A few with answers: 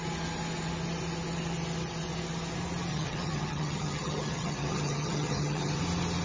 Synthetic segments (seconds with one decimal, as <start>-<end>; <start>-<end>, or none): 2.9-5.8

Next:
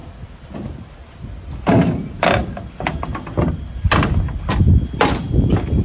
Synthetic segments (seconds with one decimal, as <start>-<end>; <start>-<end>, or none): none

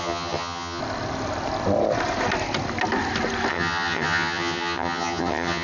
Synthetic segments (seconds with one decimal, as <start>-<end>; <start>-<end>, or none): 0.0-0.8; 3.5-5.6

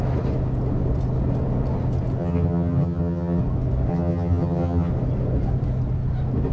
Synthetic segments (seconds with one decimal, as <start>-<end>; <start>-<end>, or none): 2.2-3.4; 3.9-4.9

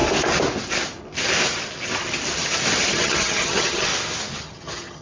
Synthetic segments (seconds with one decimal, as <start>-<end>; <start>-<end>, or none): 2.9-3.9; 4.4-5.0